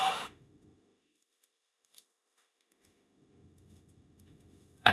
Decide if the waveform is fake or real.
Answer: fake